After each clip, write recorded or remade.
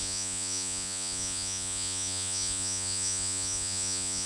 remade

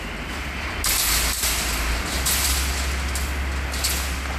recorded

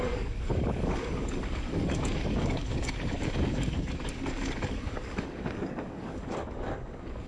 remade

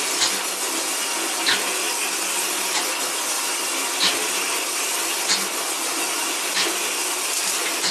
recorded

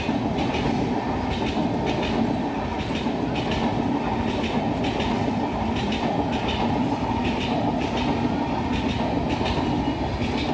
recorded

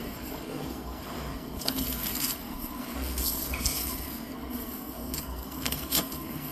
remade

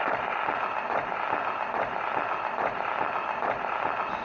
remade